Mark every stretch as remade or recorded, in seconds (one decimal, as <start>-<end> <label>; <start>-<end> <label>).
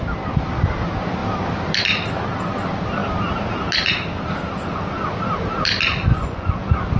0.0-6.1 recorded; 6.1-6.6 remade; 6.6-7.0 recorded